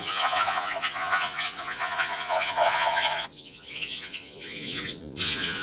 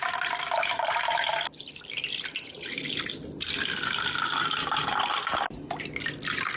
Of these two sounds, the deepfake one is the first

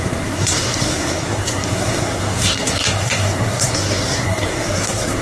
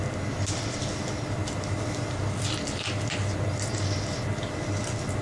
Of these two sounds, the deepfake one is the first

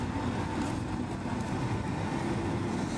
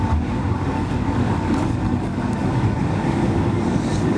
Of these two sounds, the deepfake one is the second